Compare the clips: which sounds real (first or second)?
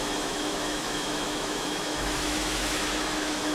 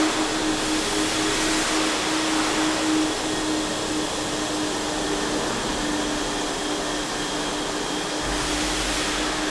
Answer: second